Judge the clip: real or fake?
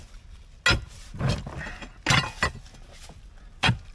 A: real